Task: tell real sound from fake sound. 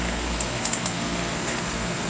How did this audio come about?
fake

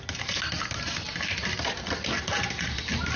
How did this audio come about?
real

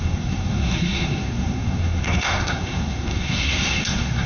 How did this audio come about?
fake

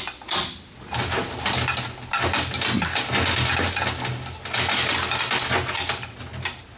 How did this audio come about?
real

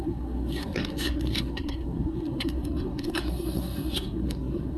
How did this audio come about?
fake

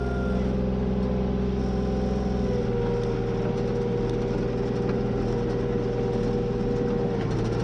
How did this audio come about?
real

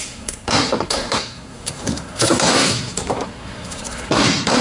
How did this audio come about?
fake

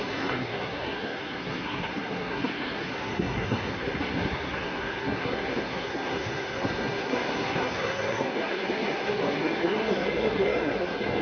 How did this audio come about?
fake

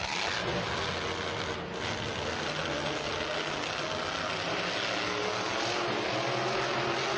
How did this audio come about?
real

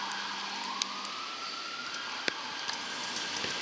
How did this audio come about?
real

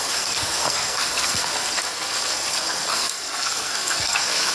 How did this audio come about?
fake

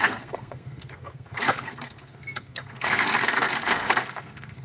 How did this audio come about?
fake